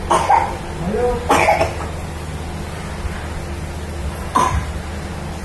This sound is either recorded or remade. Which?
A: recorded